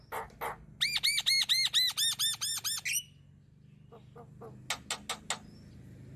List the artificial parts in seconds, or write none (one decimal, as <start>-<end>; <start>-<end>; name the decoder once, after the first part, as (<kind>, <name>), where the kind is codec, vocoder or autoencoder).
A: none